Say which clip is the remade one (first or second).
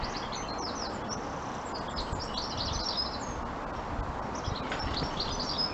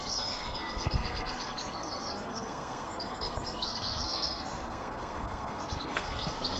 second